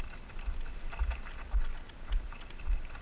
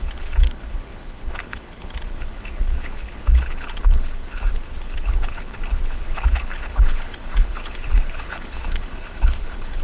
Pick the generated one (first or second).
second